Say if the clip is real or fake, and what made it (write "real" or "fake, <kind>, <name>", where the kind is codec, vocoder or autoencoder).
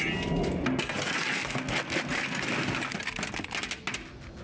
real